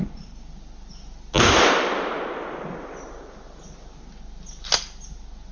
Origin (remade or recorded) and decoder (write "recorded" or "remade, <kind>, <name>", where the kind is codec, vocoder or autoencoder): recorded